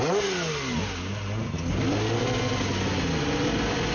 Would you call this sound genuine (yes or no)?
yes